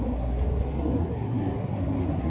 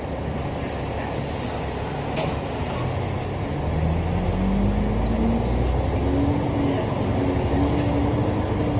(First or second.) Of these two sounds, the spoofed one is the first